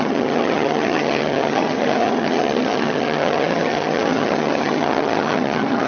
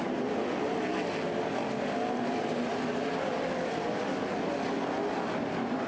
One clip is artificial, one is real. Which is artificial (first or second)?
first